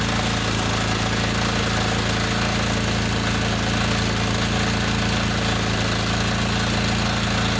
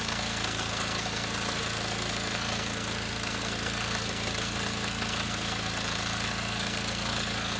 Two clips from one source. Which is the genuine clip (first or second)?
first